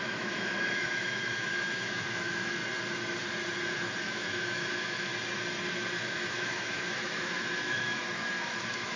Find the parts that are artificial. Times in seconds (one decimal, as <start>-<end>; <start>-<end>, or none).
0.0-2.6; 4.0-5.1; 6.0-9.0